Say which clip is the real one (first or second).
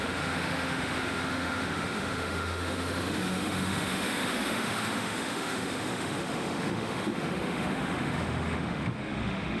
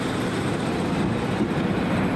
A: second